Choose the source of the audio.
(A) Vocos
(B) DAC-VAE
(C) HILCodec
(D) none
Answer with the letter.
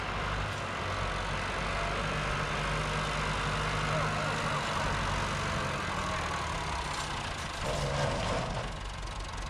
D